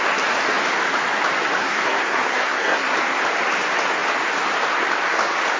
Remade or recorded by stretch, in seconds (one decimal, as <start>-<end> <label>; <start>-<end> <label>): 0.0-1.6 recorded; 1.6-2.9 remade; 2.9-5.6 recorded